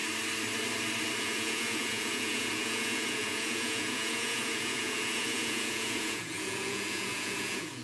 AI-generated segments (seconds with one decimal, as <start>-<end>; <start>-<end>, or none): 1.2-7.8